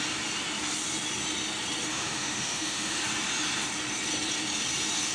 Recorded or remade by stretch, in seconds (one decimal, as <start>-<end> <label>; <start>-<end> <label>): 0.0-1.9 recorded; 1.9-3.0 remade; 3.0-5.1 recorded

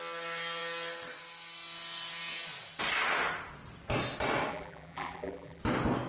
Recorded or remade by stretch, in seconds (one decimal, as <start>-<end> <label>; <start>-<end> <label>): 0.0-4.5 recorded; 4.5-5.6 remade; 5.6-6.1 recorded

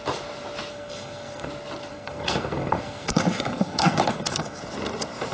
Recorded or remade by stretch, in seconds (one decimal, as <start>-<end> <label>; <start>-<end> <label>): 0.0-0.7 recorded; 0.7-1.5 remade; 1.5-1.9 recorded; 1.9-4.6 remade; 4.6-5.3 recorded

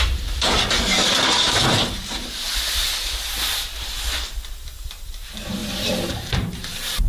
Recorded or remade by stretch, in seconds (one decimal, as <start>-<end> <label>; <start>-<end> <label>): 0.0-2.5 remade; 2.5-4.3 recorded; 4.3-5.6 remade; 5.6-6.1 recorded; 6.1-7.1 remade

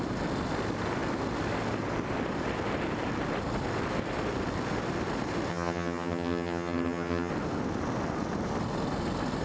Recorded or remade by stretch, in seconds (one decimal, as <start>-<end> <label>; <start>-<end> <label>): 0.0-5.5 recorded; 5.5-7.3 remade; 7.3-9.4 recorded

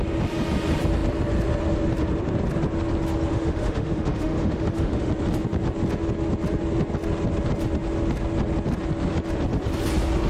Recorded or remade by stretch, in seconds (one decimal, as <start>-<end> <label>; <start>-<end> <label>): 0.0-3.3 recorded; 3.3-5.1 remade; 5.1-10.3 recorded

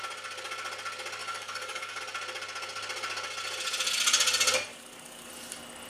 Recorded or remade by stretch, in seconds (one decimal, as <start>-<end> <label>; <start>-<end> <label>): 0.0-1.2 recorded; 1.2-2.0 remade; 2.0-4.7 recorded; 4.7-5.3 remade; 5.3-5.9 recorded

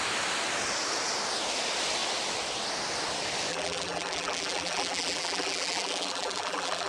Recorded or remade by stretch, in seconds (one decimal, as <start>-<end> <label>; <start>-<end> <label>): 0.0-3.5 recorded; 3.5-6.9 remade